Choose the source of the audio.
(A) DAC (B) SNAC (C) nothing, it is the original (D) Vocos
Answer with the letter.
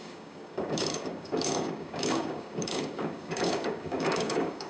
A